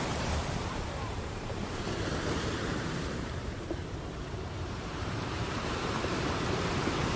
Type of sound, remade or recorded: remade